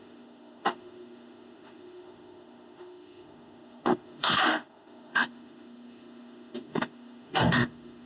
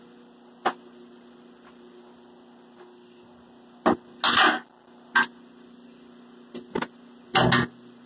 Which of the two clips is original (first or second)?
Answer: second